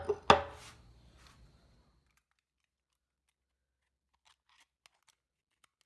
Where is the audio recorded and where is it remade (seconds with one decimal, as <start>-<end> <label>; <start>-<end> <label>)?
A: 0.0-5.9 recorded